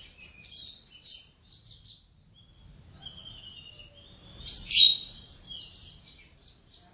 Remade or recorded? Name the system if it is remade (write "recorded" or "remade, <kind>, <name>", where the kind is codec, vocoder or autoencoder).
recorded